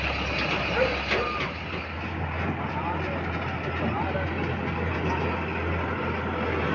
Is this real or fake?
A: real